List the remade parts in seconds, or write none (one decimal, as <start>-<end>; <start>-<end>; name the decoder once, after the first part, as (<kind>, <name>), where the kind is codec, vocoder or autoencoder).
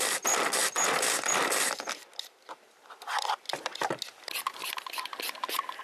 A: none